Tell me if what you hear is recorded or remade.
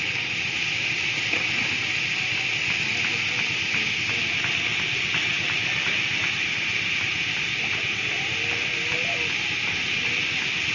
recorded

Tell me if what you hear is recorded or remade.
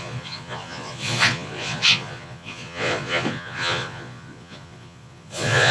remade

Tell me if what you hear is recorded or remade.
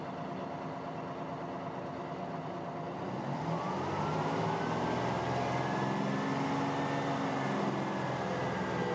recorded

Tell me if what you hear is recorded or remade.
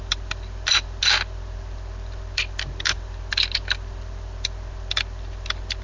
recorded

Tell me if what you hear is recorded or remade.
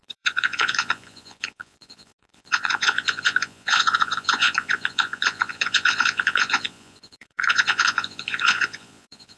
remade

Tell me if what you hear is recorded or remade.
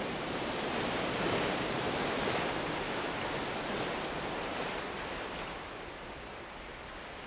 recorded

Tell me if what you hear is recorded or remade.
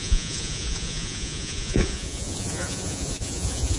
remade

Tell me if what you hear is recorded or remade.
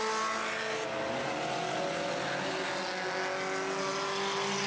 recorded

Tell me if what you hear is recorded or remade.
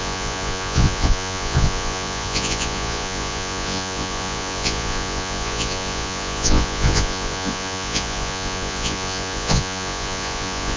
remade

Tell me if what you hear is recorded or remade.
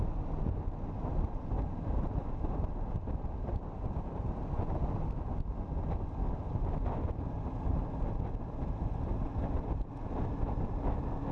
recorded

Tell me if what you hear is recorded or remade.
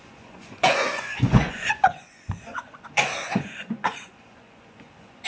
remade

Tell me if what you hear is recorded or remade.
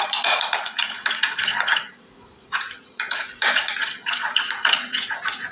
remade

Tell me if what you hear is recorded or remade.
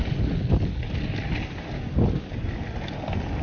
recorded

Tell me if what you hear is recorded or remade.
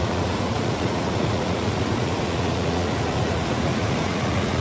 remade